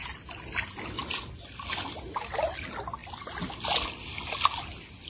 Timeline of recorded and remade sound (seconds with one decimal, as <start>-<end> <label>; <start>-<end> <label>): 0.0-5.1 recorded